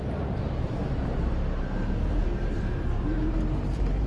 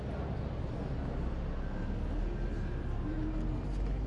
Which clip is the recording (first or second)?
second